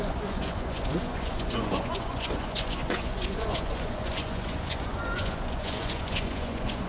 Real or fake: fake